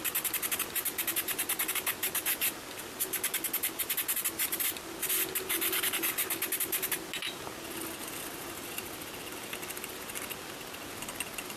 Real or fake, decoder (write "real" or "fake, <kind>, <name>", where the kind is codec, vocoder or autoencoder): real